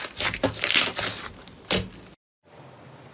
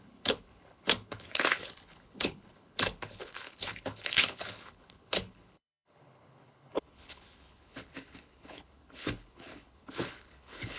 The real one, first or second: first